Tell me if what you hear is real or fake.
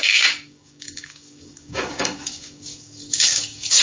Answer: fake